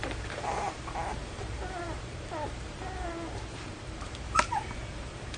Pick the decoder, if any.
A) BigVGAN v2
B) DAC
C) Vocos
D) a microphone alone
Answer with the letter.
A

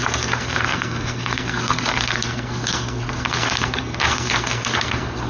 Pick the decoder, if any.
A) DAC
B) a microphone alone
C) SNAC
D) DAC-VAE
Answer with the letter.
C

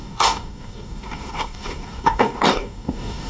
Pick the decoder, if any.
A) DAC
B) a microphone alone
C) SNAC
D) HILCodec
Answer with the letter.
A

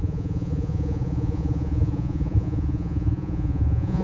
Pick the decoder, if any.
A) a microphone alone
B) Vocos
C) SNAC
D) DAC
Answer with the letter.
B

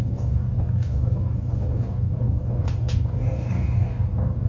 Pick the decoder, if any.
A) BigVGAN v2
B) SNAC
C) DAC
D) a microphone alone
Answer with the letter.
C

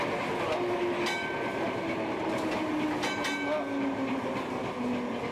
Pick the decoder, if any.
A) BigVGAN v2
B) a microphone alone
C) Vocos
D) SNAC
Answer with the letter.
B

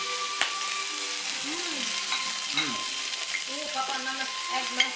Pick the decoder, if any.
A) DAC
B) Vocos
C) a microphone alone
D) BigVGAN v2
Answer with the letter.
D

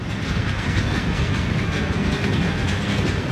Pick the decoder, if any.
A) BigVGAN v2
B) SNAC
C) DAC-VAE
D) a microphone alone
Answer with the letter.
B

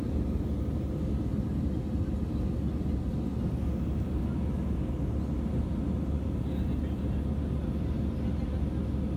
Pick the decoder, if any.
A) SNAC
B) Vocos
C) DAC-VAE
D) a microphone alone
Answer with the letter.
D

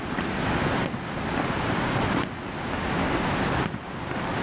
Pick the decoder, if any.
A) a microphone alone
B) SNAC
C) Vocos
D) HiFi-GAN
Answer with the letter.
A